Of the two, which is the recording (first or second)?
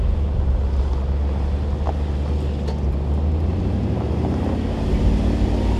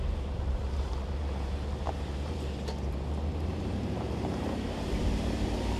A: first